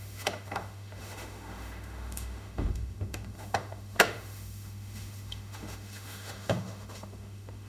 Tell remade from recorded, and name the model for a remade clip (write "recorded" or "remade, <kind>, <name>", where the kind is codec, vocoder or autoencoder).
remade, autoencoder, DAC-VAE